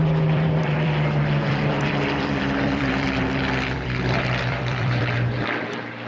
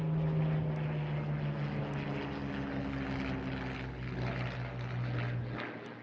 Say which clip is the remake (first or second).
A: first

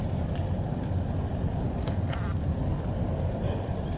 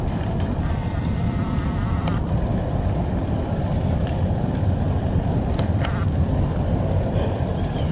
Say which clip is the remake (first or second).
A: second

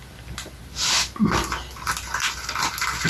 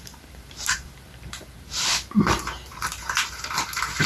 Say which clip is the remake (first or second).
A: second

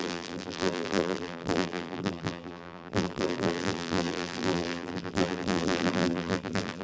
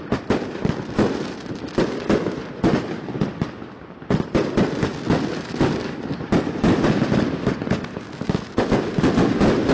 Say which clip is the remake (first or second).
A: first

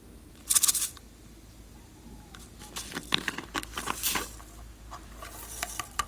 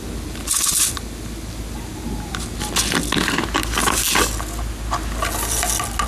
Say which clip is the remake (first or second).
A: first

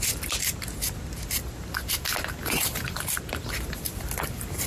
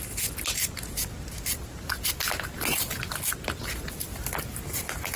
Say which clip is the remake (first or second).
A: first